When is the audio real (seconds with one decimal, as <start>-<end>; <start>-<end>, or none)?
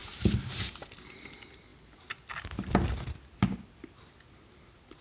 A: 0.0-5.0